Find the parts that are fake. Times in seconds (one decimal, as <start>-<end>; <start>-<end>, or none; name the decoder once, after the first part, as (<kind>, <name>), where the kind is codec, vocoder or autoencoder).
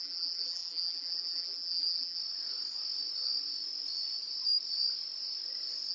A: 0.0-2.2 (vocoder, BigVGAN v2)